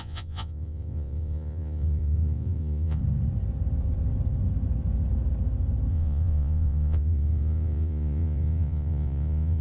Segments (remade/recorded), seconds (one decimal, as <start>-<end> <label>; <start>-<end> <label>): 0.0-3.0 remade; 3.0-5.9 recorded; 5.9-9.6 remade

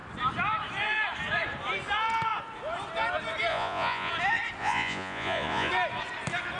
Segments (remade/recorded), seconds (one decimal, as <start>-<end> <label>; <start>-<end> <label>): 0.0-3.5 recorded; 3.5-4.1 remade; 4.1-4.6 recorded; 4.6-5.7 remade; 5.7-6.6 recorded

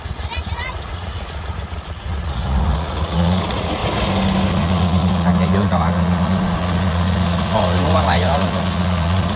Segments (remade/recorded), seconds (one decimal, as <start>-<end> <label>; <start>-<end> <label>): 0.0-3.8 remade; 3.8-4.5 recorded; 4.5-9.4 remade

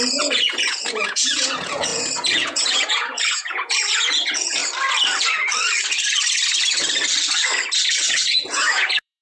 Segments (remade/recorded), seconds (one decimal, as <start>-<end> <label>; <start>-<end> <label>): 0.0-4.6 remade; 4.6-8.0 recorded; 8.0-9.2 remade

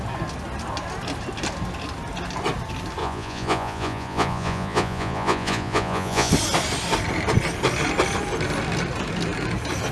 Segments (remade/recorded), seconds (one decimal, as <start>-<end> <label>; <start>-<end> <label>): 0.0-3.0 recorded; 3.0-6.3 remade; 6.3-9.9 recorded

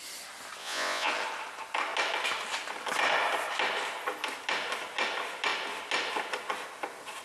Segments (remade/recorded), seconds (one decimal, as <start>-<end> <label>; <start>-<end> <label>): 0.0-0.6 recorded; 0.6-1.1 remade; 1.1-7.2 recorded

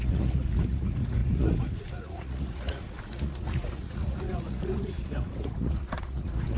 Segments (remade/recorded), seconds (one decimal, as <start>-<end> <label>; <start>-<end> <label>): 0.0-6.6 remade